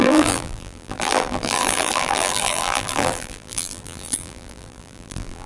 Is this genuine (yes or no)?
no